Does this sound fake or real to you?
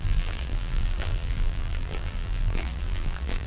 fake